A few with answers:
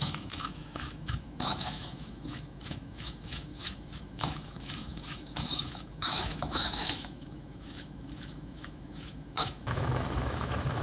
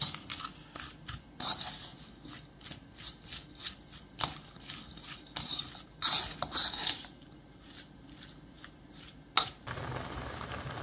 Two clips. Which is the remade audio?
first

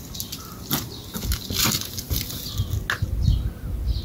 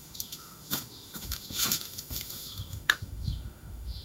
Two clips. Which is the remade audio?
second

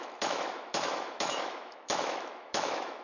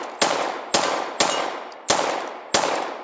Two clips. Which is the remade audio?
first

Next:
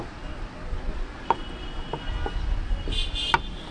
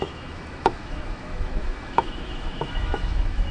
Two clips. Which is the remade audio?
second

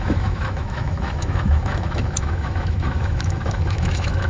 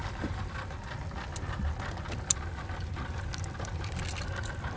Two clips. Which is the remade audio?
first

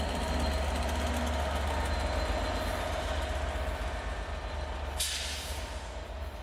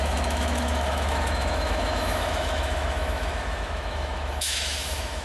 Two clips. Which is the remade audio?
second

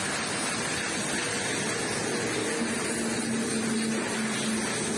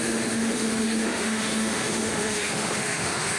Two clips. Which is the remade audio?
second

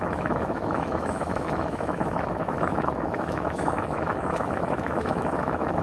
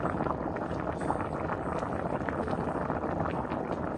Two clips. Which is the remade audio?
first